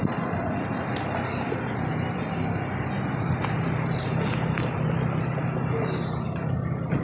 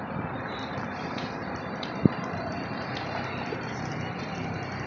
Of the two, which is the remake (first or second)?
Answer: second